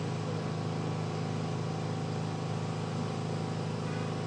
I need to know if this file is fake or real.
real